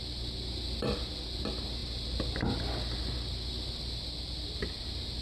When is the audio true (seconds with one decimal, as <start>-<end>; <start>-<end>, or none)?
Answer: 0.0-5.2